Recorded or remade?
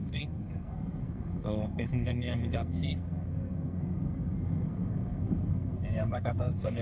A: remade